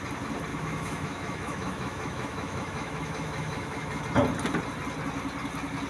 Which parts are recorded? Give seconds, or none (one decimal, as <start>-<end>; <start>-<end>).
0.0-0.5; 4.0-5.9